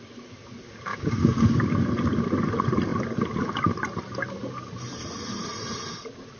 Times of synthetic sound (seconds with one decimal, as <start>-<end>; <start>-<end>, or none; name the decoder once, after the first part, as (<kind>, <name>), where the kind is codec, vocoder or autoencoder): 0.9-1.6 (codec, DAC)